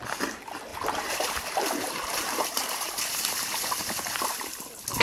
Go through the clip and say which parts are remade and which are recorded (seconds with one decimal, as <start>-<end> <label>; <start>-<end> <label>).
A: 0.0-0.7 recorded; 0.7-3.7 remade; 3.7-5.0 recorded